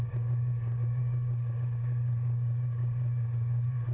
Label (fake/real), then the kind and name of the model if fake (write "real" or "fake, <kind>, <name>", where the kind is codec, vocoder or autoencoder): fake, codec, DAC